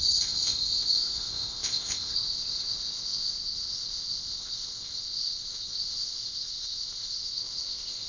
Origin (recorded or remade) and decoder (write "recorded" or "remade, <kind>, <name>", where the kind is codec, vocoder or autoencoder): remade, codec, ZipCodec